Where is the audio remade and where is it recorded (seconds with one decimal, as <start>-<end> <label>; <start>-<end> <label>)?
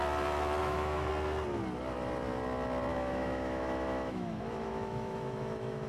0.0-0.6 recorded; 0.6-1.1 remade; 1.1-2.9 recorded; 2.9-5.9 remade